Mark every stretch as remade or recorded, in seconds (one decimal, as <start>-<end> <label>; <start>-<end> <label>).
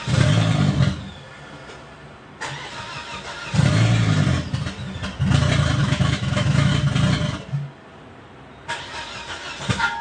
0.0-5.8 recorded; 5.8-6.7 remade; 6.7-10.0 recorded